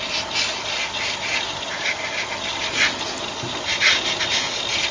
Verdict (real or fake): real